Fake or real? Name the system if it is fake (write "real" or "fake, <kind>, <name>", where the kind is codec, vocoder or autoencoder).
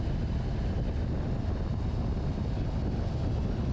real